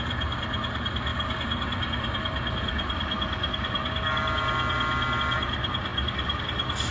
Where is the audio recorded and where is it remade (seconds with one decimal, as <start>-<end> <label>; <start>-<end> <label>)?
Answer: 0.0-6.9 recorded